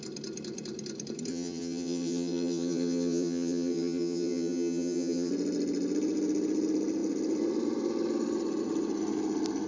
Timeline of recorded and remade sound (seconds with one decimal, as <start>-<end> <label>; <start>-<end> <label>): 0.0-1.3 recorded; 1.3-5.3 remade; 5.3-9.7 recorded